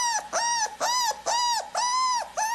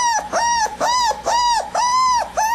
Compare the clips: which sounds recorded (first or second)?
first